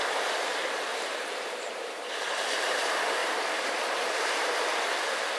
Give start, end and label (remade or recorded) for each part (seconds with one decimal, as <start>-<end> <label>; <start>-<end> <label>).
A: 0.0-0.9 recorded; 0.9-2.8 remade; 2.8-3.2 recorded; 3.2-3.7 remade; 3.7-5.4 recorded